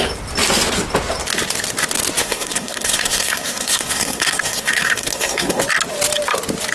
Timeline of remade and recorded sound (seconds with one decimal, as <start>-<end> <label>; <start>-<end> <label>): 0.0-2.2 recorded; 2.2-5.6 remade; 5.6-6.7 recorded